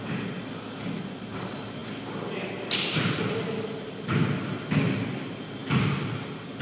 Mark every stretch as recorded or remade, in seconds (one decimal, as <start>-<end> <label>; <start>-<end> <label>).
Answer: 0.0-6.6 recorded